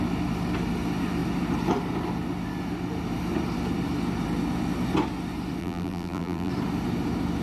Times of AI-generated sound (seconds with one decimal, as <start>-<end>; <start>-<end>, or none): 5.6-6.5